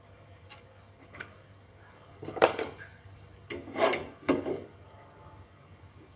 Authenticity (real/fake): fake